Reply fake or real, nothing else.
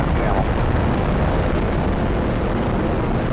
real